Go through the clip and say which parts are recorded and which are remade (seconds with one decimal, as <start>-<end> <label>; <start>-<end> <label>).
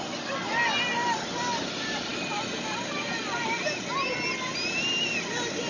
0.0-5.7 recorded